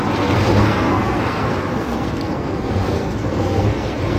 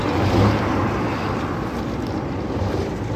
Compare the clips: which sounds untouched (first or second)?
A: second